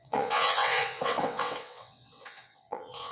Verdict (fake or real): fake